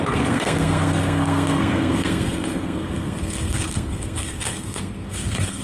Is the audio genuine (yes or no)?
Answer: no